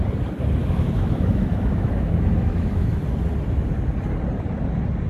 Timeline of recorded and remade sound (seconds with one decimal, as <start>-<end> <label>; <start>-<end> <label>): 0.0-0.6 recorded; 0.6-3.0 remade; 3.0-5.1 recorded